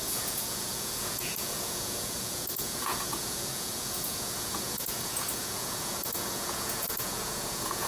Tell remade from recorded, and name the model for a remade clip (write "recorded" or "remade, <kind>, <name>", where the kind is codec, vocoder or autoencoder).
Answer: remade, vocoder, Vocos